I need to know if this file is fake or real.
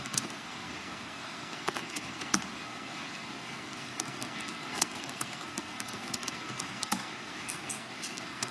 fake